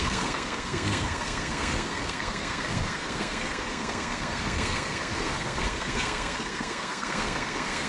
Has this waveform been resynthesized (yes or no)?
yes